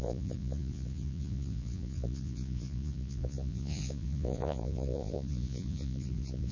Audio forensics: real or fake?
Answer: fake